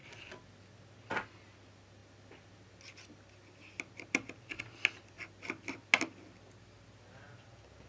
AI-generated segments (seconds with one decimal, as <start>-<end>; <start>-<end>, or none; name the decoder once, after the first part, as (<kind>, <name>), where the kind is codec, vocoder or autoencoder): none